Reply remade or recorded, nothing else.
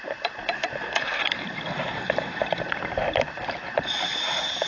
remade